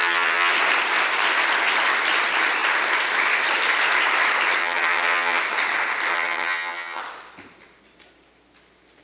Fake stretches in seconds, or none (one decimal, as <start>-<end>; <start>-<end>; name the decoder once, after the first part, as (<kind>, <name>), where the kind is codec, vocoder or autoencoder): 0.0-0.5 (vocoder, HiFi-GAN); 4.6-5.4; 6.1-7.0